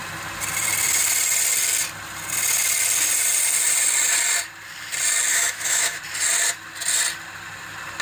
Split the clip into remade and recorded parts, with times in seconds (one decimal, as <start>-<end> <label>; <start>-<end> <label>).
0.0-5.3 recorded; 5.3-6.0 remade; 6.0-8.0 recorded